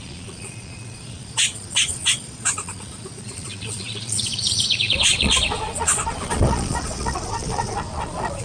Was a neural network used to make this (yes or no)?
yes